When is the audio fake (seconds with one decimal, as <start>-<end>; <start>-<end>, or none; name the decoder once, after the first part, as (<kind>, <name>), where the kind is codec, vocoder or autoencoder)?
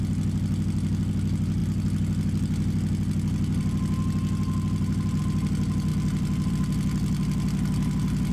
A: 5.9-6.5 (vocoder, BigVGAN v2)